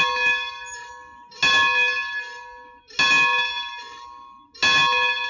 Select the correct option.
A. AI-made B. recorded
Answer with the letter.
B